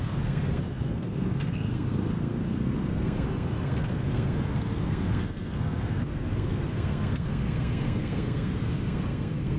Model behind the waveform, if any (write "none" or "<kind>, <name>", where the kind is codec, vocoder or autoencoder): codec, SNAC